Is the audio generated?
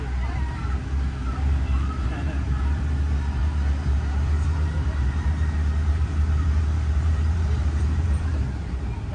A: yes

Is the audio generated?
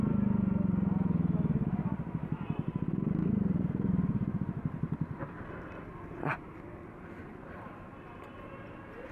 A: no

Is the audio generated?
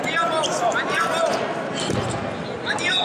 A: no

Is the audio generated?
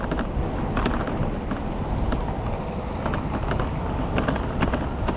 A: no